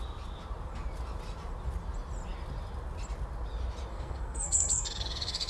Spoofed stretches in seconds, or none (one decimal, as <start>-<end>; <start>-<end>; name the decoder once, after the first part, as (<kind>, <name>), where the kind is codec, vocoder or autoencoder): 3.9-5.5 (codec, SNAC)